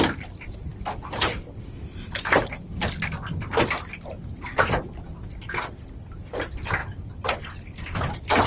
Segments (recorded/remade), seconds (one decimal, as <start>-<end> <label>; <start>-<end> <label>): 0.0-0.7 recorded; 0.7-4.8 remade; 4.8-6.8 recorded; 6.8-7.4 remade; 7.4-8.5 recorded